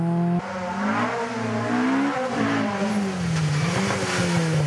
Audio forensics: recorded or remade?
recorded